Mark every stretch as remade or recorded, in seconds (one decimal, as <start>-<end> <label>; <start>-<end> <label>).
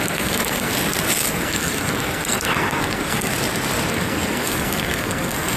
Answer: 0.0-0.7 remade; 0.7-1.3 recorded; 1.3-3.3 remade; 3.3-3.9 recorded; 3.9-5.6 remade